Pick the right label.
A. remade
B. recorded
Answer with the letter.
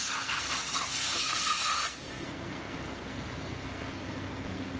A